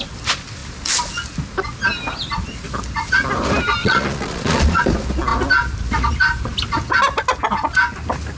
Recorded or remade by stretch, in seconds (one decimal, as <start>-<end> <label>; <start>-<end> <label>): 0.0-3.8 recorded; 3.8-4.8 remade; 4.8-8.4 recorded